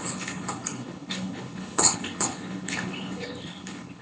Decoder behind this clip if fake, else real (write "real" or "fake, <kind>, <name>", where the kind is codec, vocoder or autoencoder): fake, codec, HILCodec